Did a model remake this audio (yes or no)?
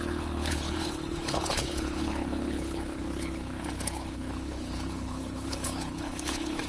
yes